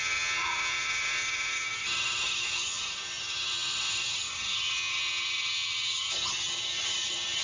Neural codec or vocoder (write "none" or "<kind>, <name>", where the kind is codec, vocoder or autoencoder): vocoder, HiFi-GAN